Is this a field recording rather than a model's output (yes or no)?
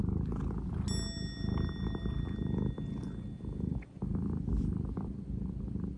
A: yes